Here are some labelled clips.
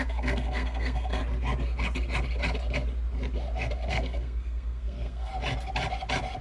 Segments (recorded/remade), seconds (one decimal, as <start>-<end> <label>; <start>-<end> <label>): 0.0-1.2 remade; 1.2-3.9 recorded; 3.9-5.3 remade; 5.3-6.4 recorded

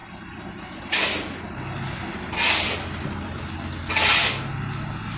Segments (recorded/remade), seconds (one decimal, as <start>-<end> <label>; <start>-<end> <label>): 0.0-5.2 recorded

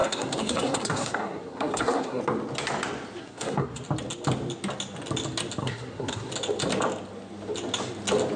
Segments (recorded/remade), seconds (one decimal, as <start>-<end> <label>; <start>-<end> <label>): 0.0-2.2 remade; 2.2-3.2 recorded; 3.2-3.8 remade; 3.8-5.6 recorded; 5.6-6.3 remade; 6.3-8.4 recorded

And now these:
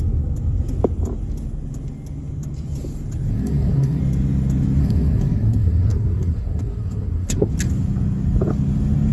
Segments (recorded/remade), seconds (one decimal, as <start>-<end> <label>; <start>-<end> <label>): 0.0-3.3 recorded; 3.3-4.0 remade; 4.0-4.8 recorded; 4.8-7.5 remade; 7.5-9.1 recorded

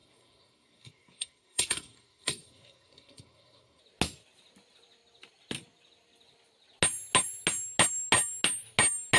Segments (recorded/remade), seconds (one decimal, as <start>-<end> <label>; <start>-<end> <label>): 0.0-3.8 remade; 3.8-9.2 recorded